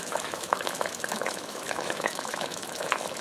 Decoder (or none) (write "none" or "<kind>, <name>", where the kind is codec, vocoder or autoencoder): autoencoder, DAC-VAE